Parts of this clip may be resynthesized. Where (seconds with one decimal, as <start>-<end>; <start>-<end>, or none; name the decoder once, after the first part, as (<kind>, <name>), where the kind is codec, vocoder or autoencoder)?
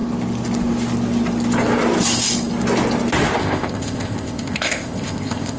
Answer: 3.4-5.6 (codec, ZipCodec)